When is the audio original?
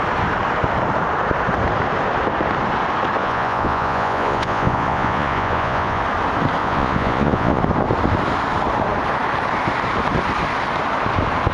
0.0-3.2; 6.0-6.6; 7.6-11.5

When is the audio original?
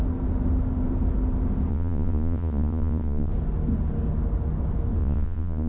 0.0-1.7; 3.3-5.0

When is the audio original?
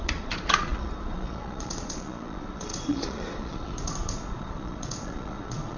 none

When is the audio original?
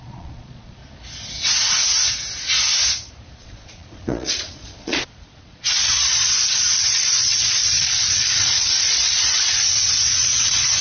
0.8-3.4